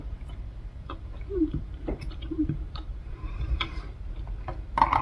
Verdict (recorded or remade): remade